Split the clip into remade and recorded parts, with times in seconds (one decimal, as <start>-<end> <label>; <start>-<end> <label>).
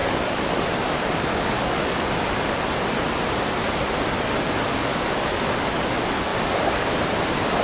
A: 0.0-0.6 remade; 0.6-1.3 recorded; 1.3-2.1 remade; 2.1-4.9 recorded; 4.9-5.8 remade; 5.8-7.6 recorded